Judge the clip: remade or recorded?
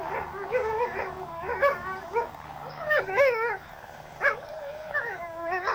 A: remade